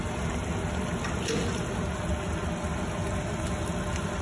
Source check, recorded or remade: recorded